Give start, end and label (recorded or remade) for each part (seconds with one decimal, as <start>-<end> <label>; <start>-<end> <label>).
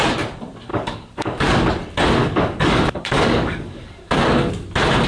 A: 0.0-0.7 recorded; 0.7-1.7 remade; 1.7-2.2 recorded; 2.2-4.5 remade; 4.5-5.1 recorded